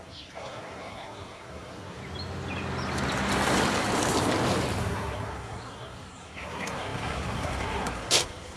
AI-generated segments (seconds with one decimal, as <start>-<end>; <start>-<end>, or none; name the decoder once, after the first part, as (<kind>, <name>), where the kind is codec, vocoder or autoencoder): 0.0-2.0 (codec, SNAC); 4.8-8.6